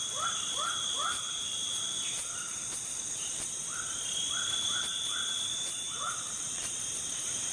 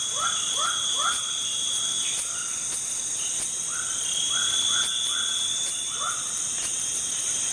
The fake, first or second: first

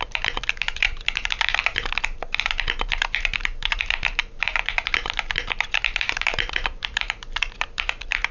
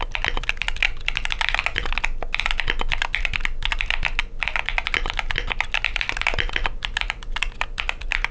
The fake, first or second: first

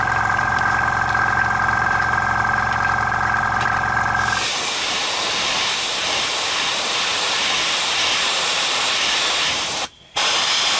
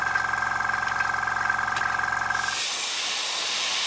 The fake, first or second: first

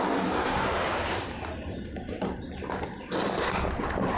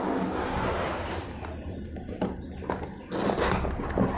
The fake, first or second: first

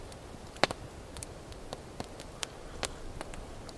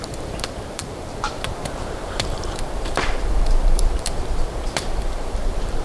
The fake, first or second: second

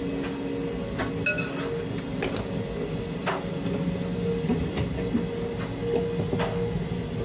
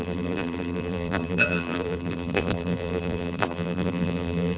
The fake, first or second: second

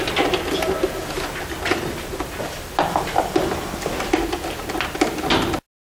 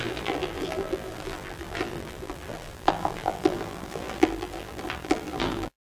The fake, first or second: second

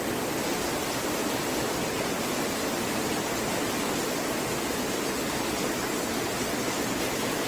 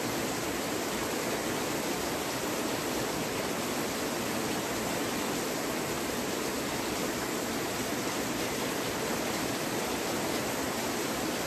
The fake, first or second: second